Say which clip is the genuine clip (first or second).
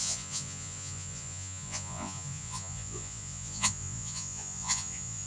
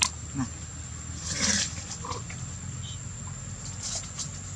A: second